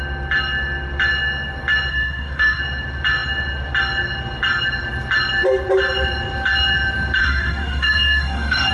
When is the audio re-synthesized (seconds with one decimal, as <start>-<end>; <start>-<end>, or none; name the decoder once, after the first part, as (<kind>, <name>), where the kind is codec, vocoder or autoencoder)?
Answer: 1.9-2.6 (autoencoder, DAC-VAE); 7.2-8.7